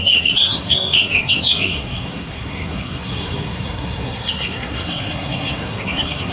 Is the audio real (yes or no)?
no